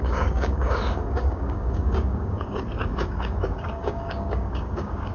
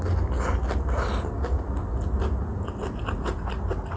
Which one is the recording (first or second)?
second